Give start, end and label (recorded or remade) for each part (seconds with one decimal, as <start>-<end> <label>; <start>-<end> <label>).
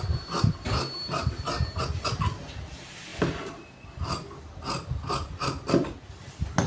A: 0.0-6.7 recorded